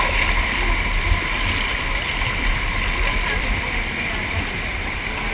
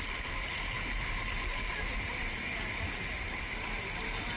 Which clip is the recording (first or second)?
first